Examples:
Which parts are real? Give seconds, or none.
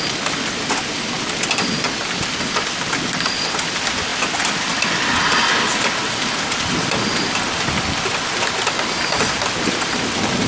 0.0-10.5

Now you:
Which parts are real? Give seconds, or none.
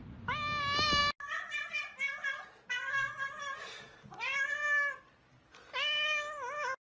0.0-6.9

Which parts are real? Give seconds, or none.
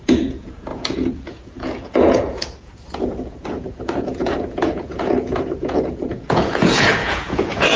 none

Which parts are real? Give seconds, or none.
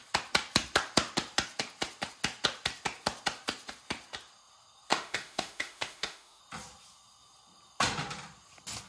0.0-4.9; 6.4-8.9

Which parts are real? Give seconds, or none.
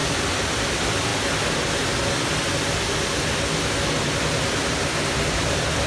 1.1-3.6